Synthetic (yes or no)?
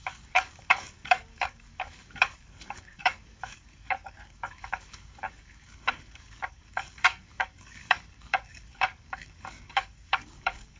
yes